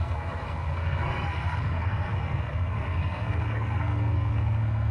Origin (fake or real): fake